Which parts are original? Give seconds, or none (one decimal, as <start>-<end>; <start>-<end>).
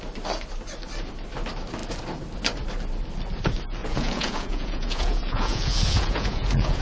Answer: 0.0-3.8